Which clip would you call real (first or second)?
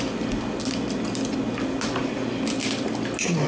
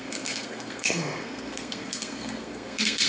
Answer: first